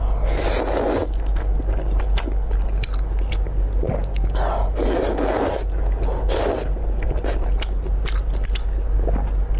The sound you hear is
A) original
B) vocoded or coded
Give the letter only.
A